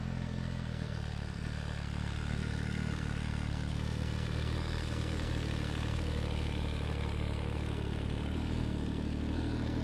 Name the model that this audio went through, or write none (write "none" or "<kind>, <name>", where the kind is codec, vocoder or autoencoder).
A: codec, SNAC